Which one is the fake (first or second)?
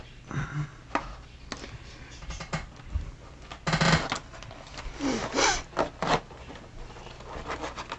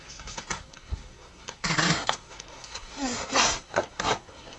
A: second